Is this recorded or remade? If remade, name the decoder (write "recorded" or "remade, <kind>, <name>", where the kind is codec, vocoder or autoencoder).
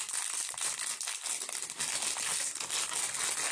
recorded